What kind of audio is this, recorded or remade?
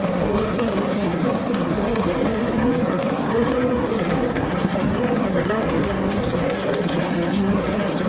remade